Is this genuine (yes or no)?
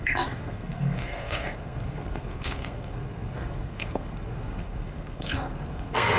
no